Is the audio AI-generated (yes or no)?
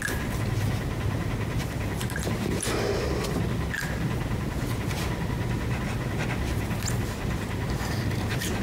no